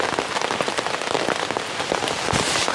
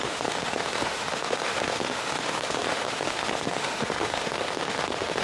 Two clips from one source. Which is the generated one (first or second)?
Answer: second